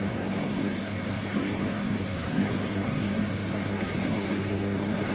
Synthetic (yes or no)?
yes